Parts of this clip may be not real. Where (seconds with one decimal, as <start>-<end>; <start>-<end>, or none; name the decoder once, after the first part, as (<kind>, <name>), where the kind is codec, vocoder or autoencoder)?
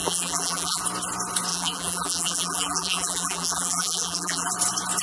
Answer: 0.0-0.8 (vocoder, BigVGAN v2); 1.5-4.5